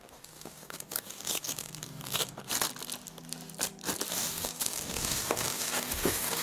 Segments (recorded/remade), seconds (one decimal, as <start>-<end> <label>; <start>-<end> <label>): 0.0-2.5 remade; 2.5-4.1 recorded; 4.1-6.4 remade